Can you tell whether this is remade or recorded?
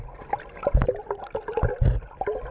recorded